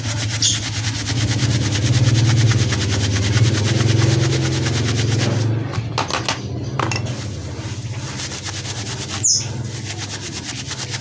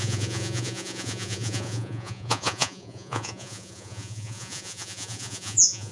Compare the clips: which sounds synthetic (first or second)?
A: second